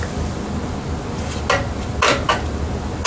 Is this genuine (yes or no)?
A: yes